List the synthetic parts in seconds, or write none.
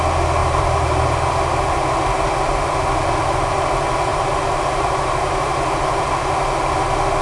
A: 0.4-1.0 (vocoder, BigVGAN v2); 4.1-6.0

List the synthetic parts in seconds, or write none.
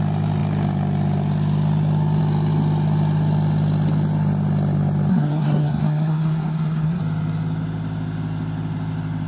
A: 5.1-7.0 (codec, SNAC)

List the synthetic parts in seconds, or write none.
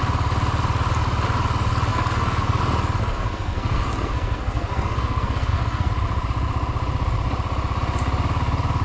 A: 1.9-2.6 (codec, SNAC); 3.0-5.9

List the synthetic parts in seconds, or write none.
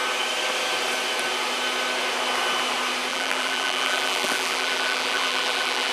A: 3.1-5.9 (vocoder, BigVGAN v2)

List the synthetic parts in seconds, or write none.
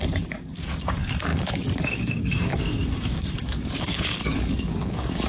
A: 0.0-5.3 (codec, DAC)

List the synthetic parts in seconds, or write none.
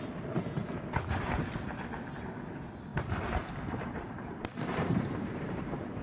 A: 2.9-6.0 (vocoder, BigVGAN v2)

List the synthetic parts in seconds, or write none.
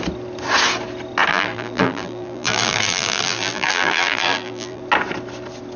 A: 1.3-4.8 (vocoder, BigVGAN v2)